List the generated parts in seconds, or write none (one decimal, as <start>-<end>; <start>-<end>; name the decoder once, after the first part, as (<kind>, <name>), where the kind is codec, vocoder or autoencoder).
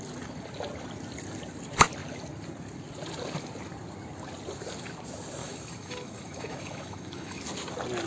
5.4-7.4 (autoencoder, DAC-VAE)